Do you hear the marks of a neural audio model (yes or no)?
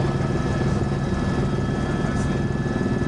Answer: no